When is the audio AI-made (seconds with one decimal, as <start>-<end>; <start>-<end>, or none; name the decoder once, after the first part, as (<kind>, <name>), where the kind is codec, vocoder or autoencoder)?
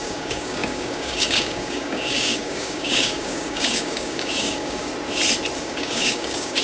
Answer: 0.0-4.9 (codec, DAC); 5.6-6.6